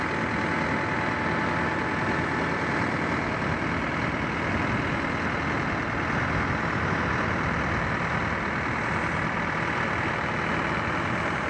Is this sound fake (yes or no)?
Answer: no